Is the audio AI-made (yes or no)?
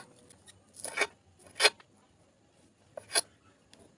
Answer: no